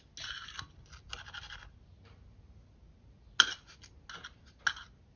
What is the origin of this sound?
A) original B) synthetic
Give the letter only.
A